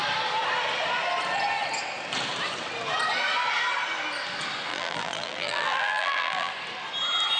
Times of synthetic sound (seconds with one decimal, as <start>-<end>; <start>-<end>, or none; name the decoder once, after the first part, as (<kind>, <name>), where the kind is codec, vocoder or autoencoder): 4.7-6.5 (vocoder, BigVGAN v2)